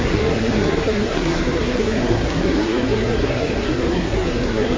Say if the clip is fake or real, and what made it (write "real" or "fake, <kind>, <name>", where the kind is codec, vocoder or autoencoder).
fake, codec, SNAC